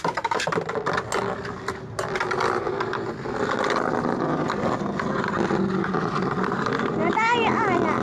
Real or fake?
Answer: real